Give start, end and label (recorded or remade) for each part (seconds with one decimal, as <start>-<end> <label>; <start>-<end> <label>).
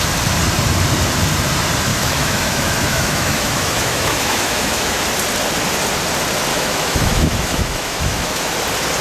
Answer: 0.0-1.9 recorded; 1.9-5.0 remade; 5.0-6.5 recorded; 6.5-8.5 remade; 8.5-9.0 recorded